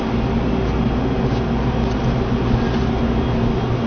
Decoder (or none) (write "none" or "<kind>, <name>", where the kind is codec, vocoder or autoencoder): none